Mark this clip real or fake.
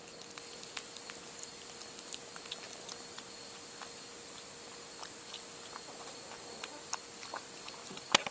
real